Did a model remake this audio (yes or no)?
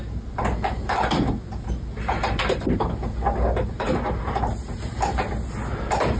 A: no